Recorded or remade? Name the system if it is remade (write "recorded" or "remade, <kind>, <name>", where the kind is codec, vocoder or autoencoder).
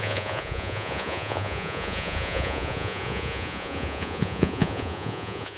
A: remade, vocoder, Vocos